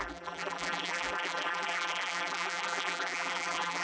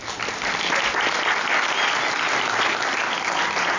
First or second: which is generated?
first